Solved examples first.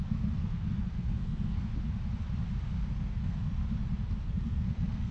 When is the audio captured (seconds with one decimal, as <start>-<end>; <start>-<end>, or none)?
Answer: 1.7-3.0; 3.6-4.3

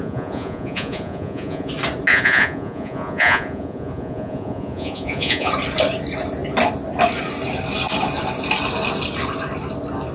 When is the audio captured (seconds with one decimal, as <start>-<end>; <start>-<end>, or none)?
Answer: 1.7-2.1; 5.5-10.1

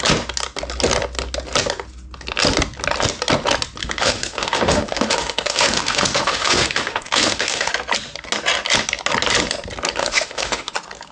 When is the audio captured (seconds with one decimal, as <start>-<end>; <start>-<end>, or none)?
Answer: 0.0-3.8; 7.7-10.0; 10.7-11.1

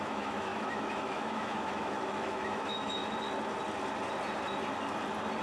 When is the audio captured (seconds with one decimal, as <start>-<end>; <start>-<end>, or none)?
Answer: 3.0-5.4

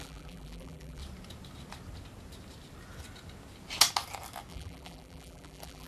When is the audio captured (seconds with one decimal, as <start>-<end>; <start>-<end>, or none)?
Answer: 1.0-4.5

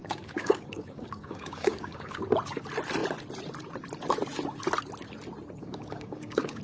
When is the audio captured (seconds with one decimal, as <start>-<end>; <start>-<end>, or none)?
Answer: 2.2-5.6

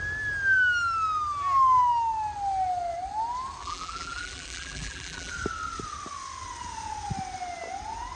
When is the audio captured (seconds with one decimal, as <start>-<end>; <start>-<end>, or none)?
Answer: 0.0-3.6; 5.3-8.2